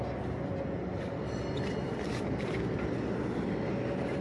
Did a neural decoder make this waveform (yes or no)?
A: no